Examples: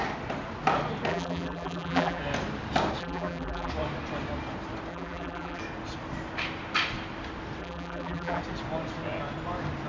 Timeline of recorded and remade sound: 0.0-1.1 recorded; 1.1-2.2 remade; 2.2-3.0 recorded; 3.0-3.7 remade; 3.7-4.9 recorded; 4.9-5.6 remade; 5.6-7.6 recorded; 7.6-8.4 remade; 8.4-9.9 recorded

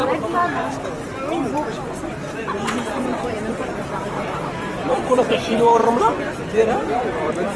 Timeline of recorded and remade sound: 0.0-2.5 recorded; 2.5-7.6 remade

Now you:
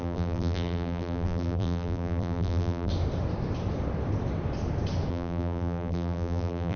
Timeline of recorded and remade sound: 0.0-2.9 remade; 2.9-5.1 recorded; 5.1-6.8 remade